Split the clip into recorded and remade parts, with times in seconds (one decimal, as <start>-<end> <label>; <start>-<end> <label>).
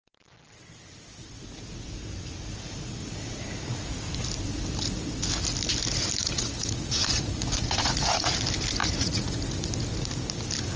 0.0-6.2 recorded; 6.2-8.3 remade; 8.3-8.8 recorded; 8.8-9.4 remade; 9.4-10.8 recorded